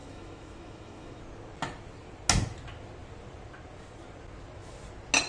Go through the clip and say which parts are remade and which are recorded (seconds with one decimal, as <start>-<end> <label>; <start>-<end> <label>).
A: 0.0-1.2 remade; 1.2-5.3 recorded